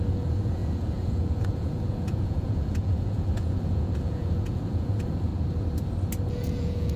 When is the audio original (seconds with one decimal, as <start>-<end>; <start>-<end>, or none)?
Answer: 5.3-6.3